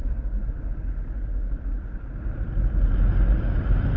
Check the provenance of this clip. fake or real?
real